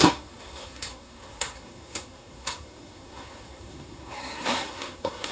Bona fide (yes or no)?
no